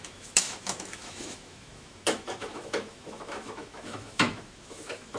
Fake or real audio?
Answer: fake